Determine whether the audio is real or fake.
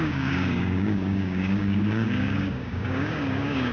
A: fake